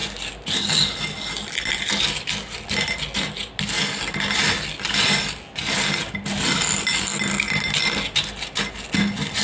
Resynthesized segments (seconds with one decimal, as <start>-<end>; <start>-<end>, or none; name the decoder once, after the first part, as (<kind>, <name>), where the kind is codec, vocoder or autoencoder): none